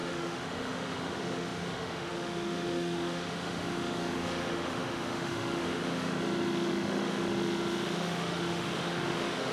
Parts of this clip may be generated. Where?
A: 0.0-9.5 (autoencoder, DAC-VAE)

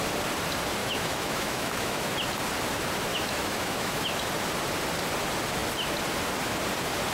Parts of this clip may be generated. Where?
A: 0.8-2.1 (autoencoder, DAC-VAE); 3.1-4.3

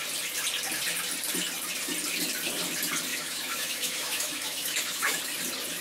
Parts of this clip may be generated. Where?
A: 3.1-5.2 (autoencoder, DAC-VAE)